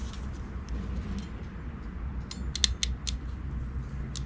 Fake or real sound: real